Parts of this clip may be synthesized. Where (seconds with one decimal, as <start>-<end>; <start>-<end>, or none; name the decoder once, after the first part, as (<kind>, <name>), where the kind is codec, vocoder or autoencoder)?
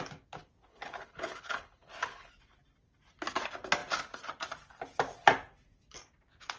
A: 0.7-2.3 (codec, HILCodec)